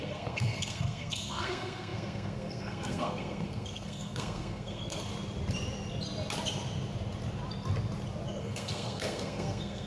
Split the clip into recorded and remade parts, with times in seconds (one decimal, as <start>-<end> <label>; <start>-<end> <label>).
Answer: 0.0-5.1 remade; 5.1-8.4 recorded; 8.4-9.9 remade